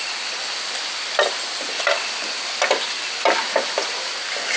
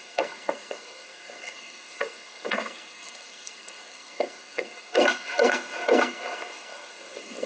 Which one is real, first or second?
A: first